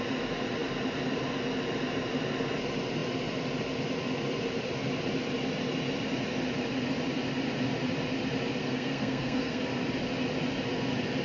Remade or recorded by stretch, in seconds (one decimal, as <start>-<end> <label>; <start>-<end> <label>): 0.0-8.6 recorded; 8.6-9.6 remade; 9.6-11.2 recorded